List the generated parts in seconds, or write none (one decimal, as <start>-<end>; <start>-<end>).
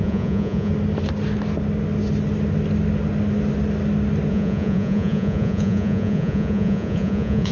0.0-0.7; 4.3-7.5